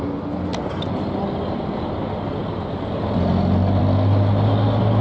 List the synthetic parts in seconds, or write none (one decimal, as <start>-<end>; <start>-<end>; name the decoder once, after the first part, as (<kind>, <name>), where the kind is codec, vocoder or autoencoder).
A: none